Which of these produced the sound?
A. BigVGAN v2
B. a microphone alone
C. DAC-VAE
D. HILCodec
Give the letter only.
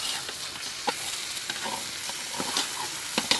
B